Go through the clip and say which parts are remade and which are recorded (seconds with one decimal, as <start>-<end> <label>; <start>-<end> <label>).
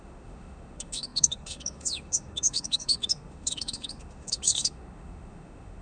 0.0-5.8 remade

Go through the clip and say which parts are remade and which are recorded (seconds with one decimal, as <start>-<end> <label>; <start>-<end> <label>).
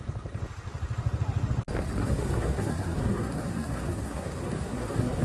0.0-2.0 recorded; 2.0-5.2 remade